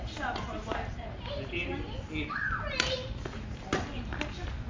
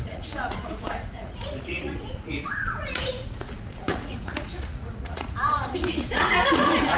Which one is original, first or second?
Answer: first